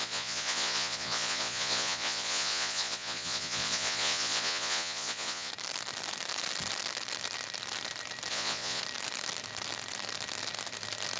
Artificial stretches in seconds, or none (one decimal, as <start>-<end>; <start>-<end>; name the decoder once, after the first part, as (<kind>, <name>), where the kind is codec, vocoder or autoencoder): 0.0-5.5 (vocoder, Vocos); 8.3-8.8